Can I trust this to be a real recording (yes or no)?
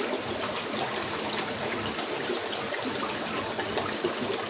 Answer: yes